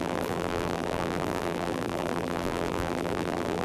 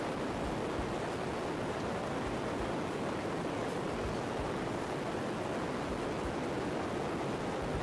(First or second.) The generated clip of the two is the first